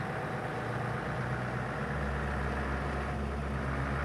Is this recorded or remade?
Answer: recorded